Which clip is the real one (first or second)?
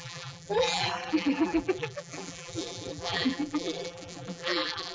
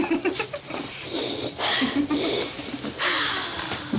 second